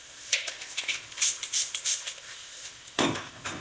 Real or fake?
fake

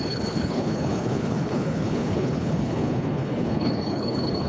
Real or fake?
fake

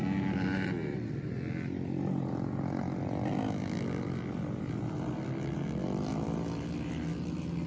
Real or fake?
real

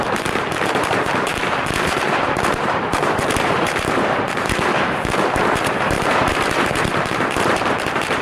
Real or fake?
fake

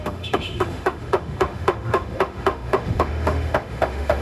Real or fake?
fake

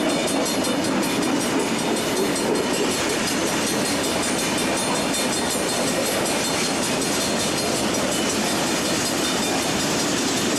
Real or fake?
real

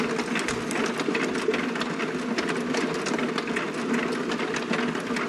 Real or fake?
real